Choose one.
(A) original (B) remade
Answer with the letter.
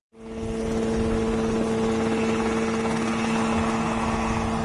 A